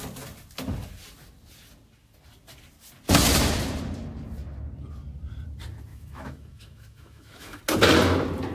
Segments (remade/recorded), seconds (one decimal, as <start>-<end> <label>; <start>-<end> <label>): 0.0-5.9 recorded; 5.9-7.6 remade; 7.6-8.5 recorded